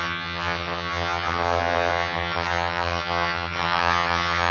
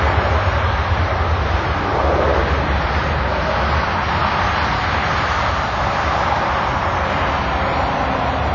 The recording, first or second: second